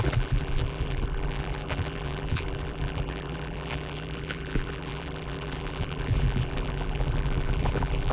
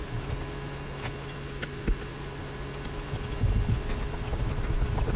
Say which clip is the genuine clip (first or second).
second